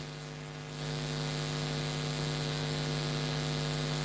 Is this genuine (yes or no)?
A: yes